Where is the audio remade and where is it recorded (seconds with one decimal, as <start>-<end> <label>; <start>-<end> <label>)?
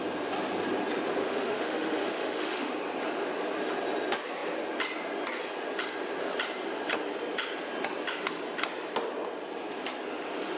0.0-1.2 recorded; 1.2-2.7 remade; 2.7-10.6 recorded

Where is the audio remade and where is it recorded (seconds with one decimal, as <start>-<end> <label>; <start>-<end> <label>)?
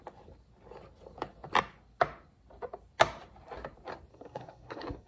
0.0-4.1 recorded; 4.1-5.1 remade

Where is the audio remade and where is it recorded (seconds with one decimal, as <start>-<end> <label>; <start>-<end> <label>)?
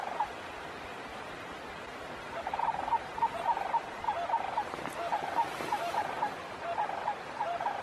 0.0-3.4 recorded; 3.4-7.8 remade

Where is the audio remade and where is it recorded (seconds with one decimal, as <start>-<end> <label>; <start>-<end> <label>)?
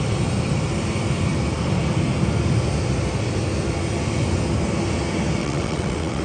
0.0-5.4 recorded; 5.4-6.2 remade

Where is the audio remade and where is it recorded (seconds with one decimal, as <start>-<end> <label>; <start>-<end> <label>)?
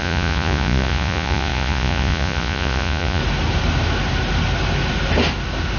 0.0-3.2 remade; 3.2-5.8 recorded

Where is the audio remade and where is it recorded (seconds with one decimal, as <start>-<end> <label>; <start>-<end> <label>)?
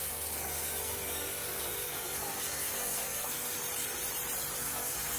0.0-3.6 remade; 3.6-4.6 recorded; 4.6-5.2 remade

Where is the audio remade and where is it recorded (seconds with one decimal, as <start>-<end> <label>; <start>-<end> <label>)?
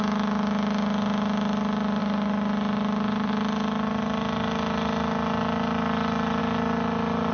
0.0-7.3 recorded